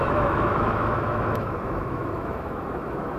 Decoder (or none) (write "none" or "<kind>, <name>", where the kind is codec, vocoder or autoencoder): autoencoder, DAC-VAE